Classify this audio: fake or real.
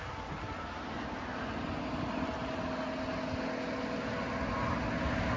real